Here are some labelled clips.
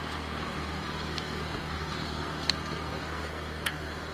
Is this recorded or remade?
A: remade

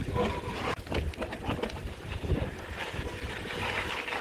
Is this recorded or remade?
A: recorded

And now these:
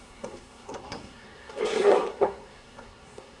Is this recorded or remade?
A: remade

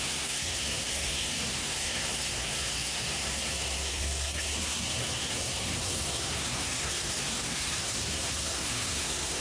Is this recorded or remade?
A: remade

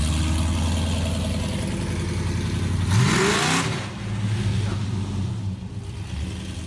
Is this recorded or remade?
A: recorded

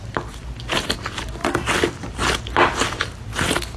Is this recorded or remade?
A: recorded